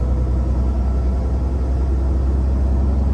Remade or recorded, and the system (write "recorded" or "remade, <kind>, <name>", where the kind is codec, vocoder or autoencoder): recorded